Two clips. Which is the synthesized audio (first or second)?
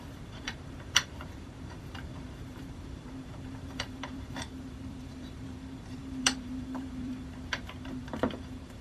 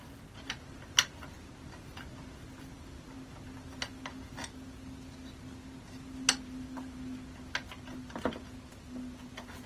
first